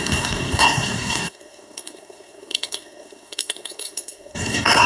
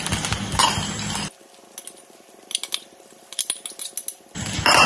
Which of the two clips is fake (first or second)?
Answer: first